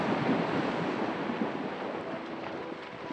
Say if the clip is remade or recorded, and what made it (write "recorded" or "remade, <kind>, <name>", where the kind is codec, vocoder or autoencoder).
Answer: recorded